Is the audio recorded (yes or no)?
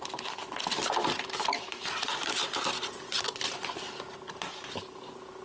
yes